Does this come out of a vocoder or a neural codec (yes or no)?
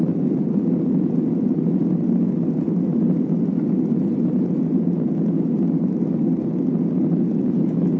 no